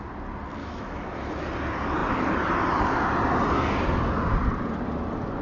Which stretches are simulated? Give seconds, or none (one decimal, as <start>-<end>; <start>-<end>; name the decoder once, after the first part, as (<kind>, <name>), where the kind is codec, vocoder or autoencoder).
0.6-1.3 (autoencoder, DAC-VAE)